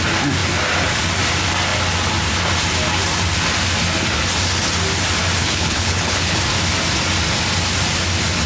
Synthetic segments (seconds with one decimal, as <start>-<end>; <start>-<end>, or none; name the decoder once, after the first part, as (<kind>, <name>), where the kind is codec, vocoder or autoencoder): 5.4-6.4 (codec, HILCodec)